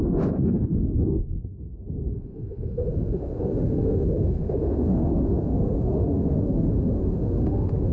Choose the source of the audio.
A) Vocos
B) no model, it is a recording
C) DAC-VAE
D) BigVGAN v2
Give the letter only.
C